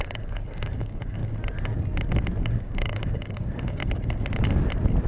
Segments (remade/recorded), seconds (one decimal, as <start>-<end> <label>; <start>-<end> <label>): 0.0-1.2 remade; 1.2-2.4 recorded; 2.4-3.8 remade; 3.8-5.1 recorded